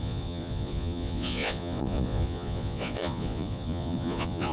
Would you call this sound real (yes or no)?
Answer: no